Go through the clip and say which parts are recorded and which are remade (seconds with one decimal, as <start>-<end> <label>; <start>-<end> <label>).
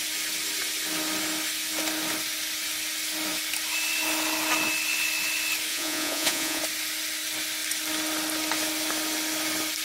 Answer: 0.0-5.7 recorded; 5.7-6.6 remade; 6.6-9.8 recorded